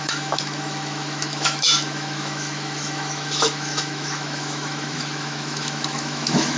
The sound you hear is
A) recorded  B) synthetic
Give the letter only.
B